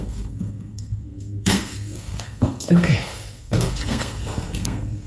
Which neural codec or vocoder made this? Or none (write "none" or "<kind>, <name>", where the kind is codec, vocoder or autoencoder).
codec, SNAC